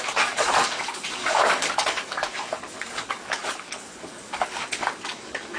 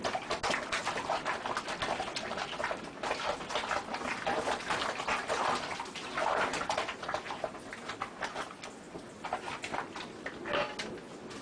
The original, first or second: second